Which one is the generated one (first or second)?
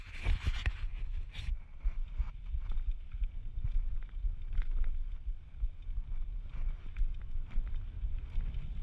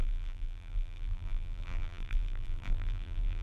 second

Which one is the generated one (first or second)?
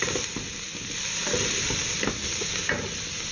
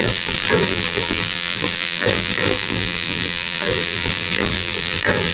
second